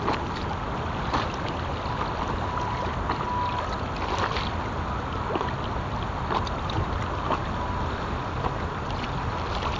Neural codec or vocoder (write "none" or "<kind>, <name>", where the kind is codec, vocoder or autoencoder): none